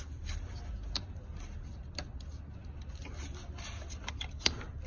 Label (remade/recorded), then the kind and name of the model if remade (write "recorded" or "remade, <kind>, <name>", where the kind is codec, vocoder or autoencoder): recorded